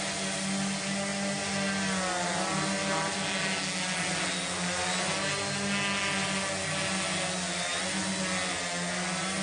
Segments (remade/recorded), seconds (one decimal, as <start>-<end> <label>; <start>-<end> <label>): 0.0-9.4 recorded